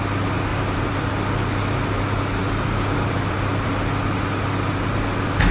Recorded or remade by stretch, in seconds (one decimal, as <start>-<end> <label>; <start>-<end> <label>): 0.0-0.5 recorded; 0.5-1.1 remade; 1.1-2.4 recorded; 2.4-3.7 remade; 3.7-5.5 recorded